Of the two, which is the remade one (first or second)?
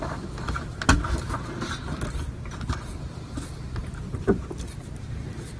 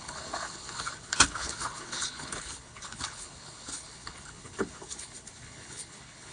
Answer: second